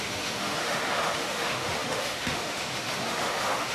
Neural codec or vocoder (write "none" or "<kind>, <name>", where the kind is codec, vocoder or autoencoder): autoencoder, DAC-VAE